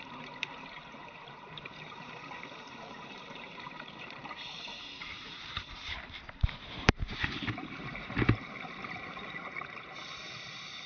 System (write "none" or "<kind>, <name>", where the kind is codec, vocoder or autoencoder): vocoder, BigVGAN v2